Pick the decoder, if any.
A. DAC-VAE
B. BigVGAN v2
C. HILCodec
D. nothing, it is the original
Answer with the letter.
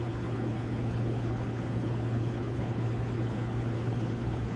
C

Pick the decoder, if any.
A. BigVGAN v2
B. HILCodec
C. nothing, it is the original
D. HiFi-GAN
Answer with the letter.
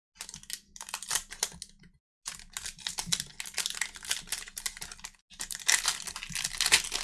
C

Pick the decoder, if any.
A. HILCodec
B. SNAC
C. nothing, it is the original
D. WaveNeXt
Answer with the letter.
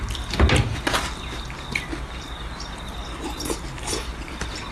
C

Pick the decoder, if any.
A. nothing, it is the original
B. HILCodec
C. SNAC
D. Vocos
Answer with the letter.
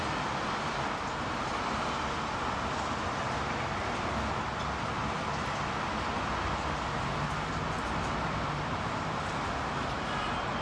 A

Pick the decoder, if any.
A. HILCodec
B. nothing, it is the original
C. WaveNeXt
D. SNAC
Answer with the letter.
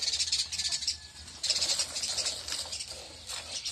B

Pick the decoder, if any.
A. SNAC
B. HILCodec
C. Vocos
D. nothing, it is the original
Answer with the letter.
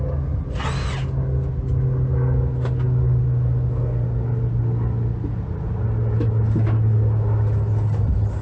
D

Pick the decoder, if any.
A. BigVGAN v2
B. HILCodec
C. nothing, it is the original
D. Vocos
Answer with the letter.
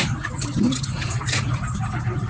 C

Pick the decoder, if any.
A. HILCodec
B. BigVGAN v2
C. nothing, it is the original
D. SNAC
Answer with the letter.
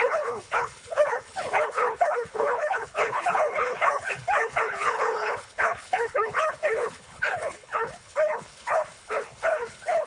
A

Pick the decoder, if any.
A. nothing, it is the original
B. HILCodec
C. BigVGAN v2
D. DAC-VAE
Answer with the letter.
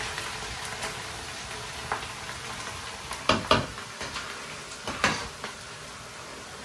A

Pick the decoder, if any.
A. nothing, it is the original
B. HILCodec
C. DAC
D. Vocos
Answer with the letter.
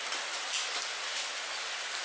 A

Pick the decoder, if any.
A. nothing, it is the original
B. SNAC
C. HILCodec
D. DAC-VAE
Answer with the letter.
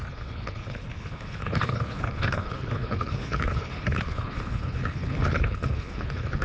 C